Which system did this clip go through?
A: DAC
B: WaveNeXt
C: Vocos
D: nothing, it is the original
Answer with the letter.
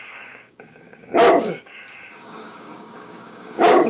A